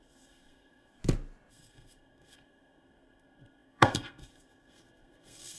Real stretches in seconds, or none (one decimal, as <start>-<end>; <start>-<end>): 1.0-1.5